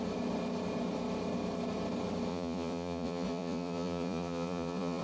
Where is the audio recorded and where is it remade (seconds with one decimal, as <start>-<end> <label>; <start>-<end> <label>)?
0.0-2.3 recorded; 2.3-5.0 remade